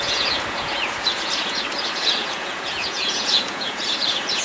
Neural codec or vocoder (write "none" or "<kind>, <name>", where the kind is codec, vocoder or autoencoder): vocoder, Vocos